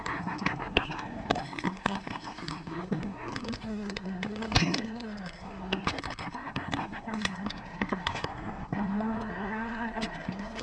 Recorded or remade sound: remade